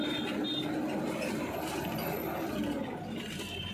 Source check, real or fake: real